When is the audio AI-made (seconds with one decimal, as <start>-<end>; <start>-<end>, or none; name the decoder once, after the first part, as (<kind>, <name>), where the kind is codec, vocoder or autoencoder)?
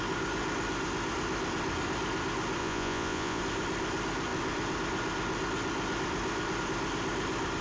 2.6-3.4 (vocoder, Vocos)